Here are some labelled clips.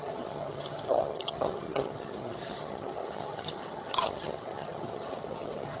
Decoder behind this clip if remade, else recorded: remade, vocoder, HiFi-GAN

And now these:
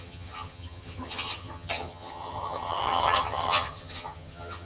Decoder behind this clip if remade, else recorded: remade, vocoder, HiFi-GAN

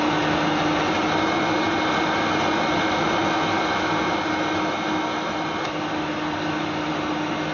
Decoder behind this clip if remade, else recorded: recorded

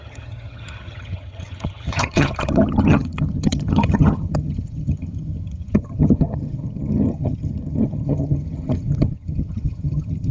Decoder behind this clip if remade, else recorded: remade, vocoder, HiFi-GAN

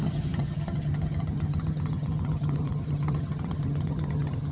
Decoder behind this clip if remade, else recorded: remade, vocoder, HiFi-GAN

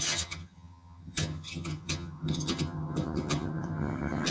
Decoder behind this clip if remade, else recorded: remade, vocoder, HiFi-GAN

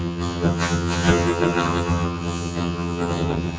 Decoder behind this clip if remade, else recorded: remade, vocoder, HiFi-GAN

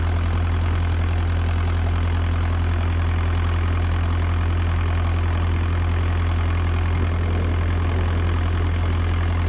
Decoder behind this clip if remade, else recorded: recorded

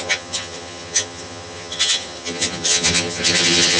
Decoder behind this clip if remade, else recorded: remade, vocoder, HiFi-GAN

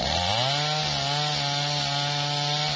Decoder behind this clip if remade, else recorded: recorded